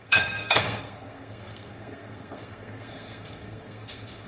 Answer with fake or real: fake